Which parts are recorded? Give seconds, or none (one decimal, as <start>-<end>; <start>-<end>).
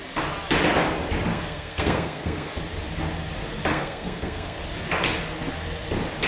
0.0-1.3; 2.5-3.7; 4.6-6.3